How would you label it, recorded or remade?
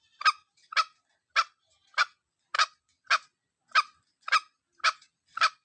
recorded